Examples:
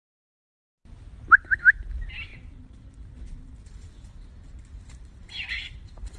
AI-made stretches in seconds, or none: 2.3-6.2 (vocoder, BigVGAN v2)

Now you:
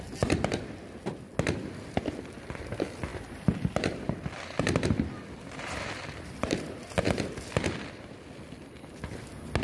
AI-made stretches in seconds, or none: 3.1-8.2 (vocoder, BigVGAN v2)